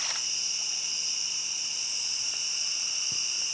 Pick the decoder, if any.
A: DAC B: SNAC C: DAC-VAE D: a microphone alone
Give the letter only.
D